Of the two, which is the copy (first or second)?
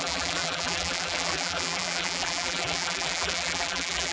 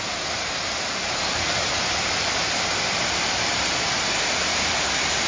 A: first